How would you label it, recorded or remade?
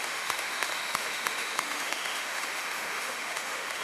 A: remade